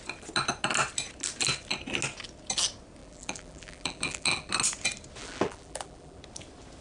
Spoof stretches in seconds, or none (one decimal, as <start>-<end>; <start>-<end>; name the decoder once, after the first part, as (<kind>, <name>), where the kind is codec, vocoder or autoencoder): 3.0-4.5 (vocoder, BigVGAN v2); 5.2-6.2